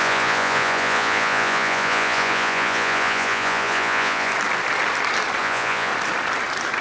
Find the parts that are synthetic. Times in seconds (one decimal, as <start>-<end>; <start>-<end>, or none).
0.0-4.3; 5.4-5.9